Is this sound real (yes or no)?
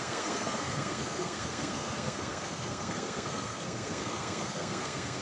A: no